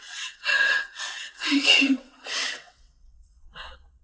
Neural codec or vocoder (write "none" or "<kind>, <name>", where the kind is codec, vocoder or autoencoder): vocoder, WaveNeXt